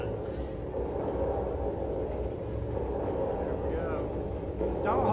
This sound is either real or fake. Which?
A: real